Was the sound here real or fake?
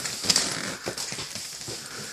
real